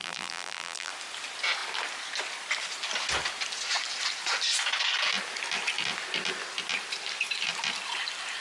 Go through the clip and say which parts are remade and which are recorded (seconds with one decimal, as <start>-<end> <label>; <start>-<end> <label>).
0.0-0.9 remade; 0.9-8.4 recorded